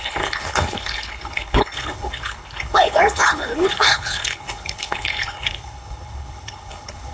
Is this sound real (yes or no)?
no